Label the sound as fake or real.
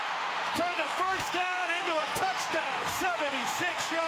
fake